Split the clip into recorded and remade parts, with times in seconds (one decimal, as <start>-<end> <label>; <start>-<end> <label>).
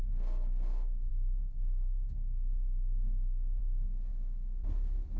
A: 0.0-1.1 recorded; 1.1-3.6 remade; 3.6-5.2 recorded